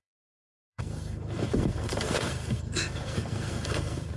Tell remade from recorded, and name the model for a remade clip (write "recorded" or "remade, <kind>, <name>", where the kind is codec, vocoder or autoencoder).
remade, codec, SNAC